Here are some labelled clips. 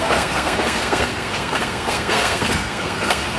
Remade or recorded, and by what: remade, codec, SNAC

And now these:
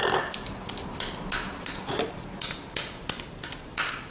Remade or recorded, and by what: remade, vocoder, BigVGAN v2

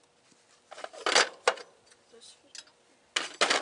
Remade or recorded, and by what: recorded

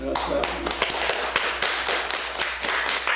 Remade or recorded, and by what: recorded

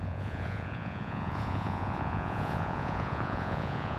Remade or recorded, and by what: remade, vocoder, Vocos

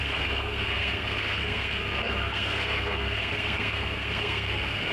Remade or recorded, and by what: remade, codec, SNAC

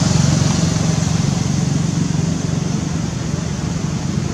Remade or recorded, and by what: recorded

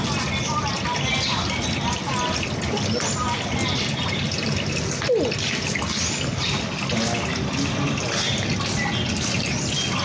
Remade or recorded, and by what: recorded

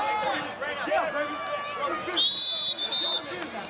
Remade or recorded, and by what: recorded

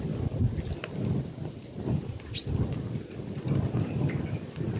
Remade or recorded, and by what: recorded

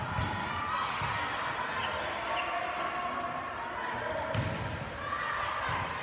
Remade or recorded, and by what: recorded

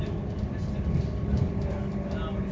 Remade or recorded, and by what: recorded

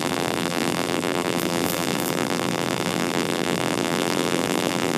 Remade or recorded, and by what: remade, vocoder, BigVGAN v2